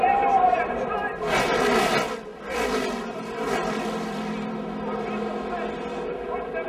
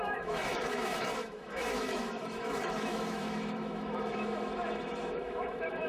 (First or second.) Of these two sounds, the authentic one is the first